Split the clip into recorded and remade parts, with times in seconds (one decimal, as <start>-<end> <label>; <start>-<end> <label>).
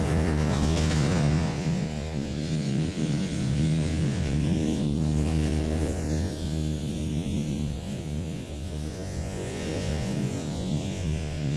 0.0-11.6 remade